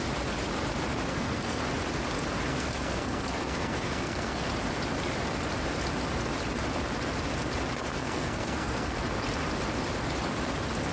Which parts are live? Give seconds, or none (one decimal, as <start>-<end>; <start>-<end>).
0.0-1.1; 1.6-2.5; 4.5-7.9; 9.0-10.9